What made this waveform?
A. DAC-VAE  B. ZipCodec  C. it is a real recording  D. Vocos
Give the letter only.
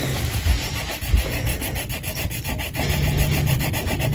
C